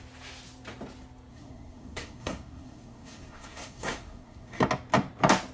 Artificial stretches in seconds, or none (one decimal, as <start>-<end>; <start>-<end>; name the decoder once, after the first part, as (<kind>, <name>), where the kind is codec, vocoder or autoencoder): 1.3-4.6 (codec, SNAC)